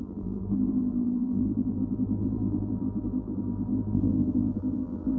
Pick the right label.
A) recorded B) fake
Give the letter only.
B